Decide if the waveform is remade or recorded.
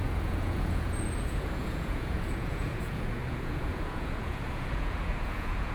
remade